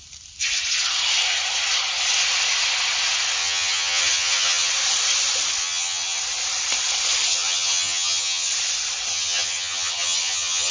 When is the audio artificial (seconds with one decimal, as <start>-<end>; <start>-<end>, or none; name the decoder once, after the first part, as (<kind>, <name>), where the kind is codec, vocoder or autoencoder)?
3.4-4.7 (vocoder, HiFi-GAN); 5.6-6.2; 7.3-8.5; 9.1-10.7